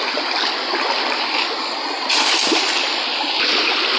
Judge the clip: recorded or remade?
recorded